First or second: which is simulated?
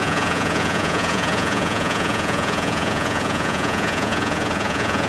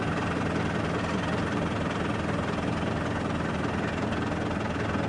first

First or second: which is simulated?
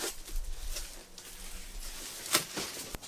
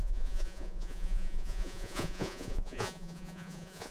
second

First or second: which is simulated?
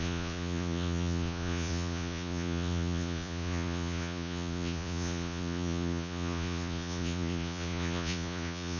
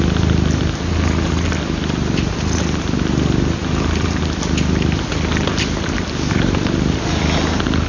first